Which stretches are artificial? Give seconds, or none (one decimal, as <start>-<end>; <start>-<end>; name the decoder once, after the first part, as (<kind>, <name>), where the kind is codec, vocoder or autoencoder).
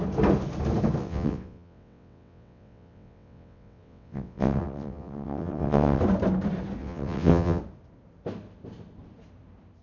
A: 1.0-6.0 (vocoder, WaveNeXt); 6.8-7.6